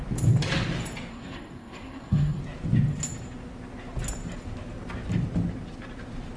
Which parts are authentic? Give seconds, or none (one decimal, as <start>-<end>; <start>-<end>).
0.0-1.1; 2.4-6.4